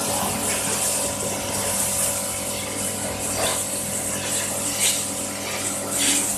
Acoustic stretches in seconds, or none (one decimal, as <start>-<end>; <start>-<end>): 0.0-6.4